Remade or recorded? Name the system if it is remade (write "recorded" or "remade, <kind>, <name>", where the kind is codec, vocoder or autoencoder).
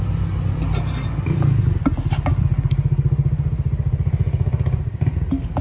recorded